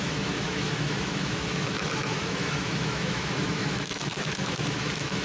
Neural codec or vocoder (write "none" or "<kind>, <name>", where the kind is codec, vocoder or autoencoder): autoencoder, DAC-VAE